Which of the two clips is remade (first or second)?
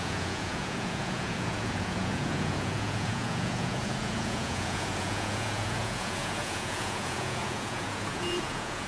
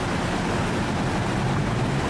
first